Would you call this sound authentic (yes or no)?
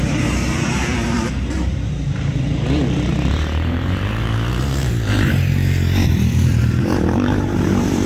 no